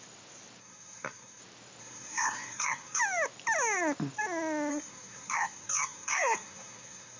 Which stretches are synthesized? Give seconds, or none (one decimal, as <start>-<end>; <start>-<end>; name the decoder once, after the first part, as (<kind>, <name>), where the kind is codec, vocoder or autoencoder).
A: 0.6-1.4 (codec, SNAC); 1.8-3.0; 4.7-7.2